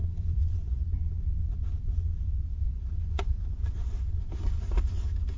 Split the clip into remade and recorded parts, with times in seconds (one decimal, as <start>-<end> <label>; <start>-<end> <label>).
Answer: 0.0-0.8 remade; 0.8-2.5 recorded; 2.5-5.4 remade